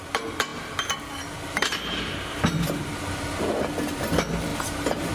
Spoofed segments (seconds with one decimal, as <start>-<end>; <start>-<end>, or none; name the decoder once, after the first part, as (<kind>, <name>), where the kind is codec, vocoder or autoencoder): none